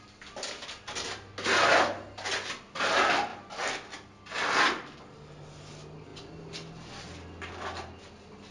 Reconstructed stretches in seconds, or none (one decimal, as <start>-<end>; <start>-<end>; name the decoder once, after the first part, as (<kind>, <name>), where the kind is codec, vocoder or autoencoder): none